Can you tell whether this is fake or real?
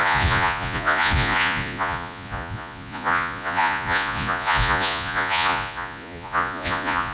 fake